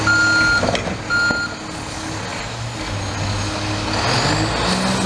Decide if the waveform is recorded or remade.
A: recorded